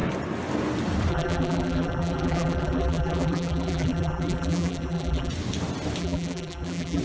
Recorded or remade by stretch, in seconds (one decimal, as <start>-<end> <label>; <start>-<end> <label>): 0.0-1.1 recorded; 1.1-5.3 remade; 5.3-6.0 recorded; 6.0-7.0 remade